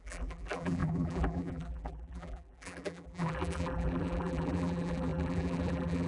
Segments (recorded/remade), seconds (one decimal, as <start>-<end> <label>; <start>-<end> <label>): 0.0-6.1 remade